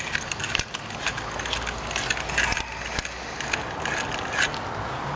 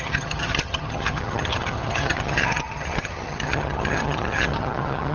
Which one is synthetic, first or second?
second